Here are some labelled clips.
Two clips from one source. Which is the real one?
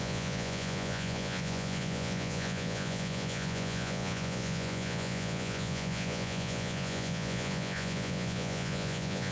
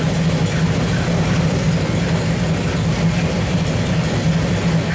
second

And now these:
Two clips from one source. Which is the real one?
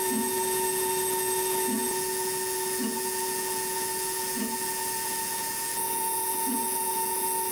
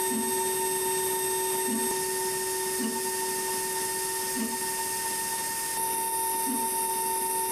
second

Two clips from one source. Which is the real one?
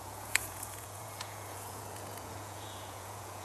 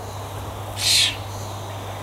second